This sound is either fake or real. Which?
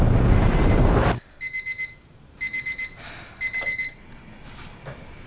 real